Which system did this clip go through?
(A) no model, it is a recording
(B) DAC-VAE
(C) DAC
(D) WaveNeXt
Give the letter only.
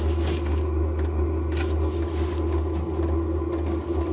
A